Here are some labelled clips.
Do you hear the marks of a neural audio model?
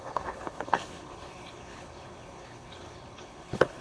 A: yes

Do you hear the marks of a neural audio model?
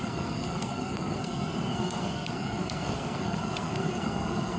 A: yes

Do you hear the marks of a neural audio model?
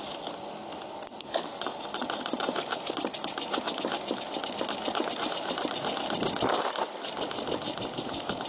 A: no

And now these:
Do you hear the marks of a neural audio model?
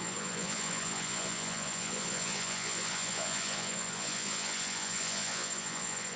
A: yes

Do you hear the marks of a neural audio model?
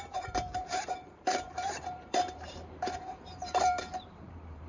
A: yes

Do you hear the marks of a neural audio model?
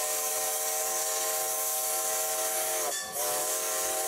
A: yes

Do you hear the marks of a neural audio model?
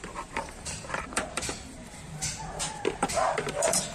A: yes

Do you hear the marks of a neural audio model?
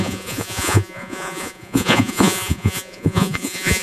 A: yes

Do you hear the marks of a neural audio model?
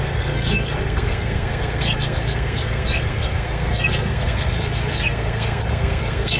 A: yes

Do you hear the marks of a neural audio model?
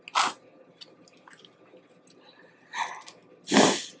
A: no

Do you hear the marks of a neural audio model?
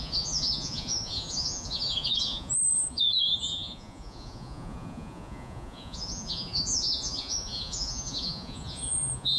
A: yes